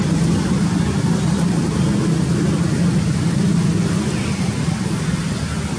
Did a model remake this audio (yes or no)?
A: no